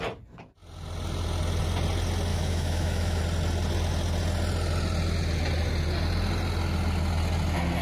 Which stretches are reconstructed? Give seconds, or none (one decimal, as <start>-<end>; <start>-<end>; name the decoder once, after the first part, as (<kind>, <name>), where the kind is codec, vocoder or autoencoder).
2.3-3.2 (autoencoder, DAC-VAE)